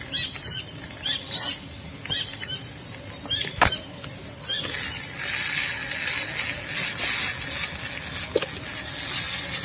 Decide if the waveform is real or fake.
real